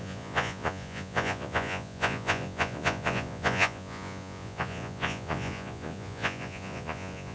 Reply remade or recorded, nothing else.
remade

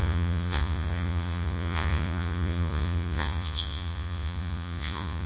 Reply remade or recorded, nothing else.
remade